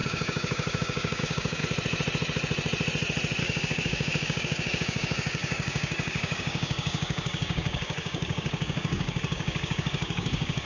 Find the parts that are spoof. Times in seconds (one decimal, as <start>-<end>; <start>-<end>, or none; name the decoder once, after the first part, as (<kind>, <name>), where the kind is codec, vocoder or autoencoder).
0.0-1.6 (codec, DAC); 3.4-10.7